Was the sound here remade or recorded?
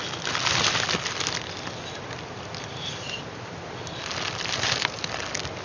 recorded